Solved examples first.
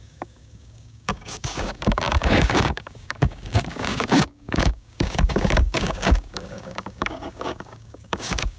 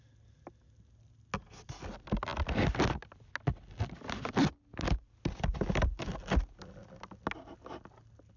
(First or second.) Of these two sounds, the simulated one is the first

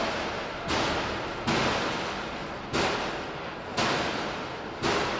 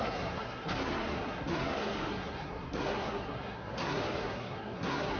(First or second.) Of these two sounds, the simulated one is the second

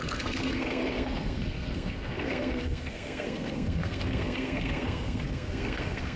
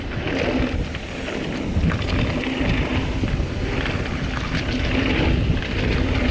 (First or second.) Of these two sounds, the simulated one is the first